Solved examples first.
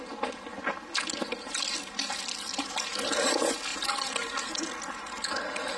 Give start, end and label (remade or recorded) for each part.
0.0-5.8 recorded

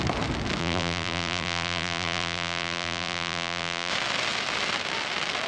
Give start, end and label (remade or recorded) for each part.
0.0-0.6 recorded; 0.6-3.9 remade; 3.9-5.5 recorded

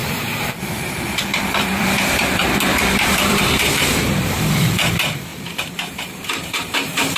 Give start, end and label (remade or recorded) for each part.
0.0-7.2 remade

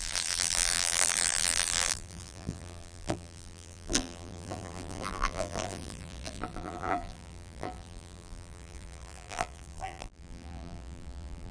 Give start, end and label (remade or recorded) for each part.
0.0-11.5 remade